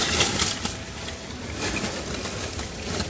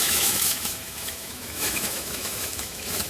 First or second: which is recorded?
first